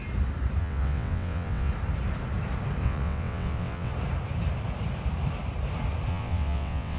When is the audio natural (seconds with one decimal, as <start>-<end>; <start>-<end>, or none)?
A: 0.0-0.6; 1.7-2.8; 3.9-6.1